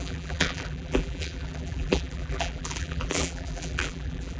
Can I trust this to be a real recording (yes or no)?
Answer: no